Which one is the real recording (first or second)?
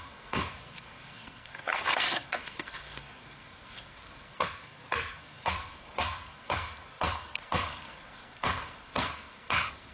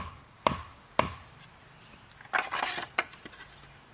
second